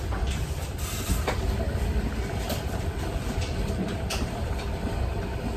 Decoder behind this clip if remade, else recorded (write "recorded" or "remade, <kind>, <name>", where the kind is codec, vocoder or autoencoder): remade, vocoder, BigVGAN v2